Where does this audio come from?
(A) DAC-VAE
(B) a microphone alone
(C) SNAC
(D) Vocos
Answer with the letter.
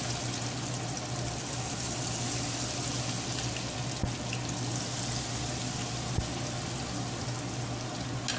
B